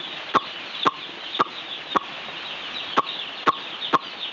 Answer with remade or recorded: recorded